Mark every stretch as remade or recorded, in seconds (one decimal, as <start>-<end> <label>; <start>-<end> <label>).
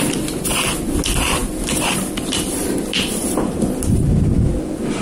0.0-3.2 recorded; 3.2-4.5 remade; 4.5-5.0 recorded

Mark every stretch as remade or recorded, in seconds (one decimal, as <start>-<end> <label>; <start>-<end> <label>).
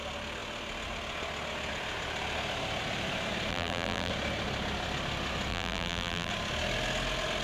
0.0-3.5 recorded; 3.5-4.1 remade; 4.1-5.5 recorded; 5.5-6.3 remade; 6.3-7.4 recorded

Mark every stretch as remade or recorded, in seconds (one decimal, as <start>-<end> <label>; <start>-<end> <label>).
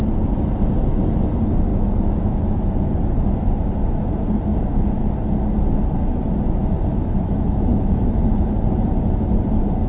0.0-1.7 recorded; 1.7-2.7 remade; 2.7-4.5 recorded; 4.5-5.0 remade; 5.0-6.9 recorded; 6.9-8.5 remade; 8.5-9.9 recorded